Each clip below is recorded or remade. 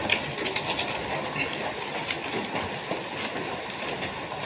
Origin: recorded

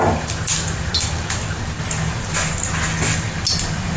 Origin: recorded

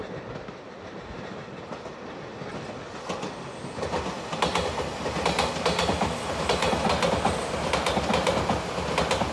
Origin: recorded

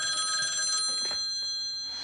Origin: recorded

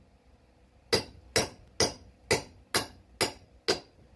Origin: recorded